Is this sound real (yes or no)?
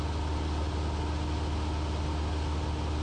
yes